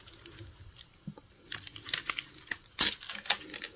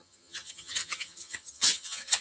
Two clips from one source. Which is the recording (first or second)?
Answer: first